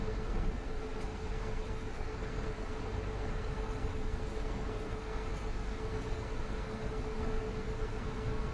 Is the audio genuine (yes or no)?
no